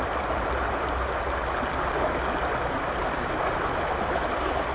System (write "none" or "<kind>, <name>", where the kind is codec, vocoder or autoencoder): none